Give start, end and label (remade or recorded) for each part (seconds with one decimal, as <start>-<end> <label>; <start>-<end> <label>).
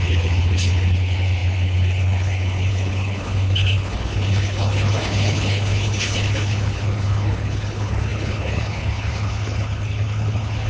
0.0-10.7 remade